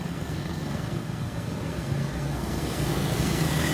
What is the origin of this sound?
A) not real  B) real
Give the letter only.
A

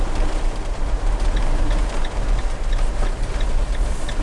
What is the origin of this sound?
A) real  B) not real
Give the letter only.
A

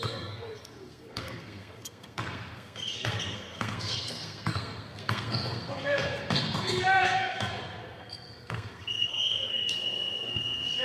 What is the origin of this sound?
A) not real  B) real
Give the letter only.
A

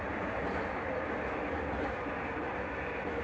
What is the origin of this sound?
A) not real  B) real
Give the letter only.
B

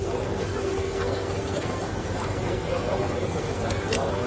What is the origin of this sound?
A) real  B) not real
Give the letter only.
B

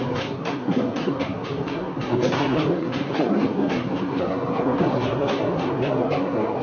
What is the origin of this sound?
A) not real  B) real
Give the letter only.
A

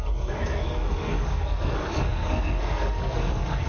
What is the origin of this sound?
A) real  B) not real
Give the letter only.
B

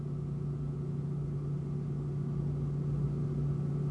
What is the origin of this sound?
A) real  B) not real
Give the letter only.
A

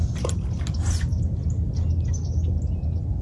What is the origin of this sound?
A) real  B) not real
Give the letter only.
A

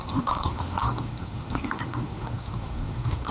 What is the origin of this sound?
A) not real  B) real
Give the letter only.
A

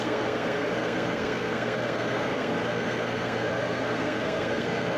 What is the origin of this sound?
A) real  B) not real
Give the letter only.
B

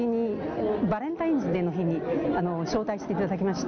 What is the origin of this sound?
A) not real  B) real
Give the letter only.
B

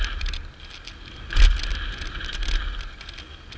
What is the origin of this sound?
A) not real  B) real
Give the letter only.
B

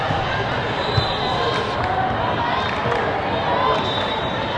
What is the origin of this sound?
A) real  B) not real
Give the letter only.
A